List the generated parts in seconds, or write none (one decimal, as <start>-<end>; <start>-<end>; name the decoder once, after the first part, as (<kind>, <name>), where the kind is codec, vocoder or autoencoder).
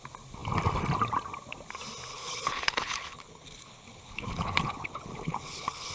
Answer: 2.1-5.9 (codec, HILCodec)